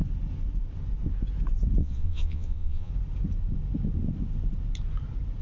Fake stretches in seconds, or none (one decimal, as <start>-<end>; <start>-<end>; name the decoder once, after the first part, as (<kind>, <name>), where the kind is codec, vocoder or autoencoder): 1.8-2.9 (vocoder, Vocos)